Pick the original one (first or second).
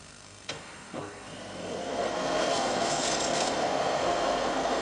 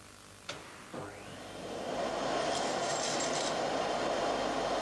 second